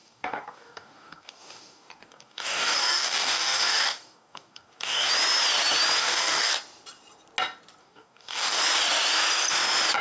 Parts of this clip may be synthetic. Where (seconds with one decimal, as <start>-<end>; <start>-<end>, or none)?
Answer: 0.0-5.1; 6.0-6.5; 7.8-8.6